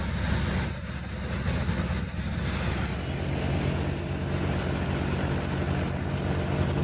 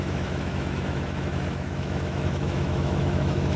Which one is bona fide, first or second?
first